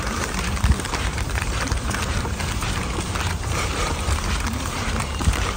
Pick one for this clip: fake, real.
fake